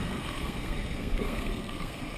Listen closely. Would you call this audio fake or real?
fake